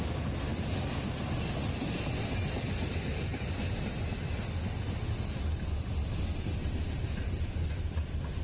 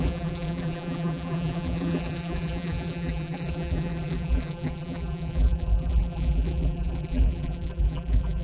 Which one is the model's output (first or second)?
second